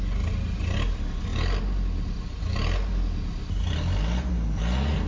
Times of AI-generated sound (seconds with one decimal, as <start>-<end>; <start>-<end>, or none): none